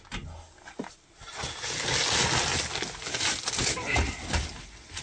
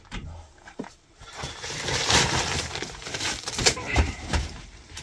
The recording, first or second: first